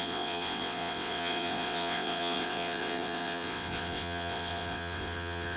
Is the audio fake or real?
fake